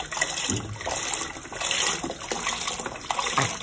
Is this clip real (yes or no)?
yes